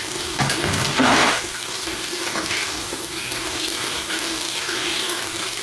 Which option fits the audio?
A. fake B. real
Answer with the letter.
A